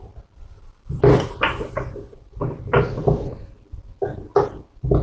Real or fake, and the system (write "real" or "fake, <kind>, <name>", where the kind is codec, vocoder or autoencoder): real